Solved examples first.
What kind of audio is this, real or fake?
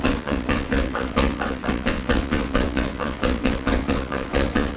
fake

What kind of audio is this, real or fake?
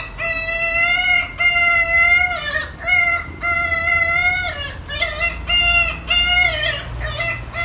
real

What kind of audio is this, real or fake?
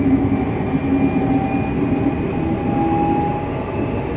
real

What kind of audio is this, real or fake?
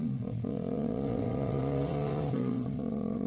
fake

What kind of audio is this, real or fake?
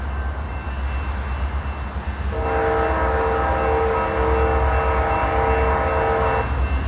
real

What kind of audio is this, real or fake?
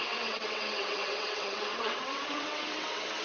fake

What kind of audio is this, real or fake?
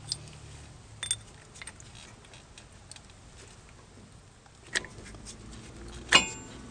real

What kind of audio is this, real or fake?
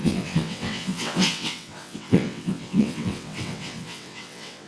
fake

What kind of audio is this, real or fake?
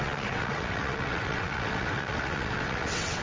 fake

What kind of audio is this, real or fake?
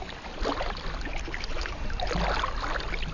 real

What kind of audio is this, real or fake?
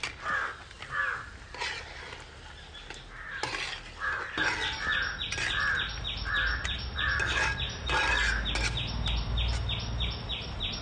real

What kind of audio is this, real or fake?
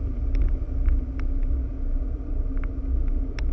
real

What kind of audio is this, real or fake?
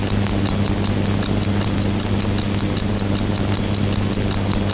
real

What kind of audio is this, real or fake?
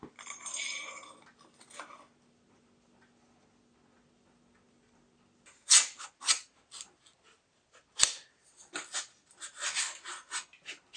real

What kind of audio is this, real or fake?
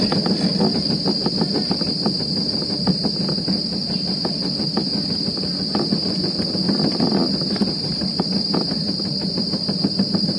real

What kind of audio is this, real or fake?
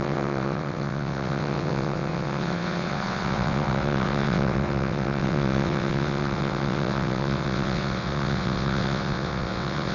fake